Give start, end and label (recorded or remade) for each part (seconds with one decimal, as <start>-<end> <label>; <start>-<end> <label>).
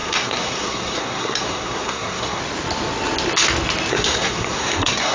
0.0-2.4 remade; 2.4-3.9 recorded; 3.9-5.1 remade